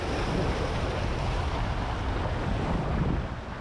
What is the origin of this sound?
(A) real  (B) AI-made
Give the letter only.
A